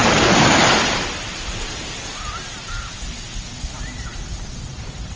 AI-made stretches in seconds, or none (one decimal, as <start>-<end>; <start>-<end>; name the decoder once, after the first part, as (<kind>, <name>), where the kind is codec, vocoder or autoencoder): 3.1-4.1 (vocoder, BigVGAN v2); 4.7-5.2